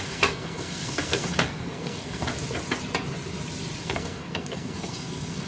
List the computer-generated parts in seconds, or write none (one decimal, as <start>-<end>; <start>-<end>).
0.0-2.3; 3.8-5.5